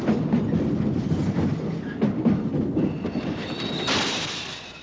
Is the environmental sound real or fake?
real